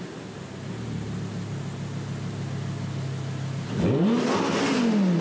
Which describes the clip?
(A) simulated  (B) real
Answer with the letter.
B